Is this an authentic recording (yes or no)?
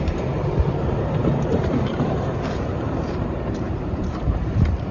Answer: no